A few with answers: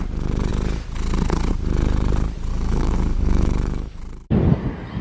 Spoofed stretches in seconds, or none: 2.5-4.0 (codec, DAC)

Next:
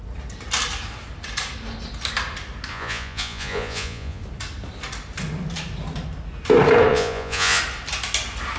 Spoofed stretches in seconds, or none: 2.7-4.2 (vocoder, Vocos); 6.9-7.6